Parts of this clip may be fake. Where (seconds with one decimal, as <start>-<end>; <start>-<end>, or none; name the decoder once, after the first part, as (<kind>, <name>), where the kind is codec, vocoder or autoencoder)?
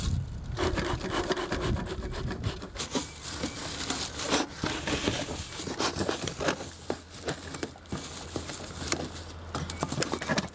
none